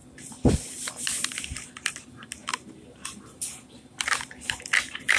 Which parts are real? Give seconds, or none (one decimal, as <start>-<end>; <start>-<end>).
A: 0.9-5.2